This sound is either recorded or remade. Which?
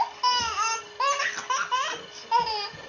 recorded